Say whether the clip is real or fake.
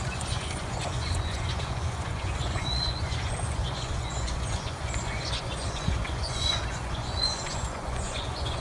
fake